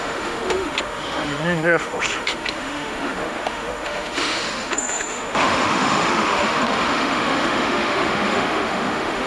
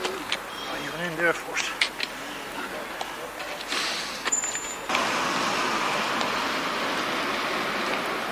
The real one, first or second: second